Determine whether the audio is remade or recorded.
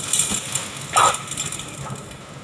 recorded